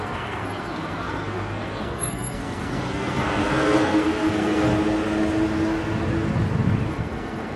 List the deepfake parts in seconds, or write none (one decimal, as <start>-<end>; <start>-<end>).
0.0-4.7; 6.9-7.6